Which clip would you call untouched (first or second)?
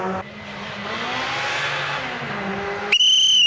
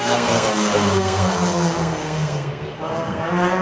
first